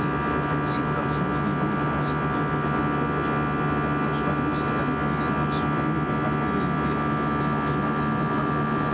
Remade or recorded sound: recorded